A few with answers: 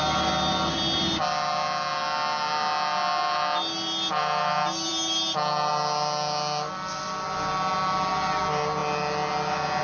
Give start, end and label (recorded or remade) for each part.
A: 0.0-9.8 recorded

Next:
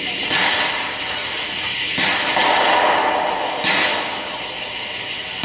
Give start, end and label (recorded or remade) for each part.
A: 0.0-5.4 recorded

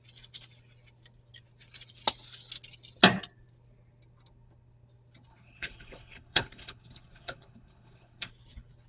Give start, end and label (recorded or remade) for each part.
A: 0.0-5.3 recorded; 5.3-8.3 remade; 8.3-8.9 recorded

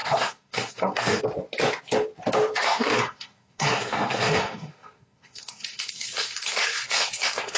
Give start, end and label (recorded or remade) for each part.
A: 0.0-1.2 remade; 1.2-2.6 recorded; 2.6-7.6 remade

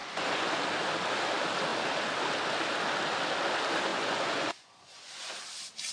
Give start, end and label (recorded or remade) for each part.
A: 0.0-0.6 remade; 0.6-3.9 recorded; 3.9-5.3 remade; 5.3-5.9 recorded

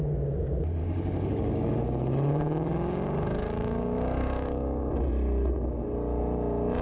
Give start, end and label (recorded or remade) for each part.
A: 0.0-0.8 recorded; 0.8-4.9 remade; 4.9-6.8 recorded